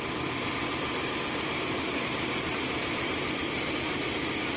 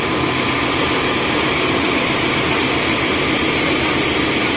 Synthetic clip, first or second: first